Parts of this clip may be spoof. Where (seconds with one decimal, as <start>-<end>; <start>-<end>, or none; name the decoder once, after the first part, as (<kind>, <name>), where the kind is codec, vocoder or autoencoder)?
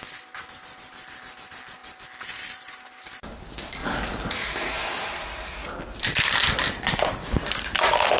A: 3.8-5.1 (codec, DAC)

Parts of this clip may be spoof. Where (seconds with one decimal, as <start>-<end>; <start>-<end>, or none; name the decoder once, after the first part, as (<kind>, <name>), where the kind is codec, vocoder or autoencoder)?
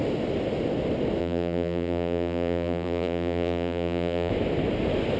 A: 1.2-4.3 (vocoder, BigVGAN v2)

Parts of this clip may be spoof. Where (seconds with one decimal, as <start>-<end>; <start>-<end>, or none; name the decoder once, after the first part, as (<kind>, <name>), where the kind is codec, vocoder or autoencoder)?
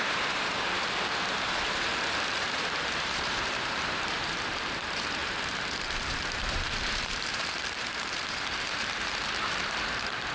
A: 0.0-1.9 (vocoder, BigVGAN v2); 2.4-10.3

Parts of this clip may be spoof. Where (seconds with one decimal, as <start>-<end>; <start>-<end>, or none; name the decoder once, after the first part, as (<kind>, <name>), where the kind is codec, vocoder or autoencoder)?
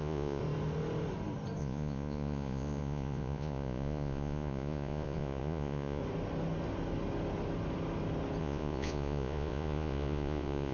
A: 0.0-0.4 (vocoder, Vocos); 1.6-6.0; 8.4-10.7